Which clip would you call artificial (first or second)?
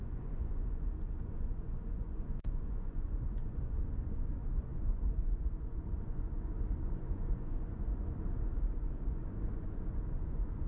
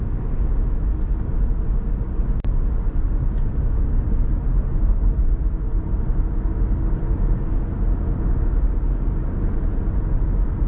first